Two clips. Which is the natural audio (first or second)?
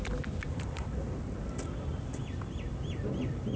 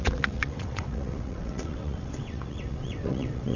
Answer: first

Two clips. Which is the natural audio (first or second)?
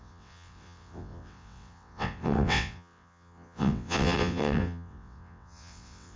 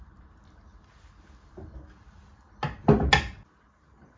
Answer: second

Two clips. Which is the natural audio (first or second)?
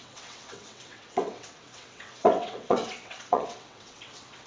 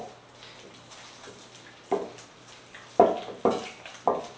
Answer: second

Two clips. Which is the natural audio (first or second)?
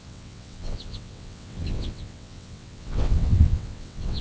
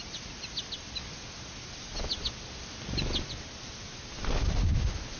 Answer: second